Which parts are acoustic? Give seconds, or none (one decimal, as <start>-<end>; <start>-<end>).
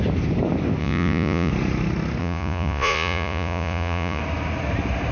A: 0.0-0.8; 1.5-2.2; 4.2-5.1